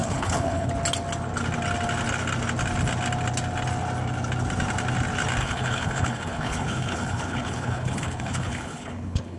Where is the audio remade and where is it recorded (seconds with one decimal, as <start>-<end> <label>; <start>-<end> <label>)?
0.0-0.7 remade; 0.7-5.4 recorded; 5.4-9.4 remade